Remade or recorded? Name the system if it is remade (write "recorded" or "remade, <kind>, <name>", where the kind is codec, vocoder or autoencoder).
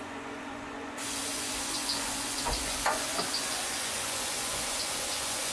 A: remade, vocoder, Vocos